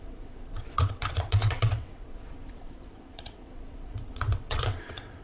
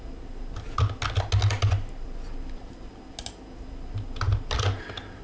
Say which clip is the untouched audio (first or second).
second